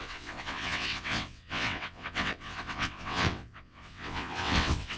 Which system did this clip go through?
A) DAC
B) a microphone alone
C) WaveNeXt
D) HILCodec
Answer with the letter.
C